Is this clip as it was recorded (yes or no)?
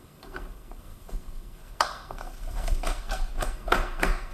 no